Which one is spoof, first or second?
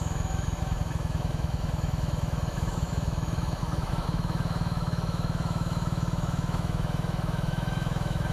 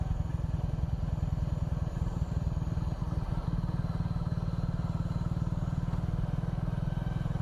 first